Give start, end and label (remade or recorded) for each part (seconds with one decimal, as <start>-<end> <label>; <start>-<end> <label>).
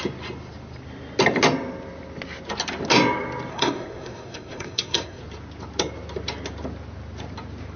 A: 0.0-3.5 recorded; 3.5-5.2 remade; 5.2-7.8 recorded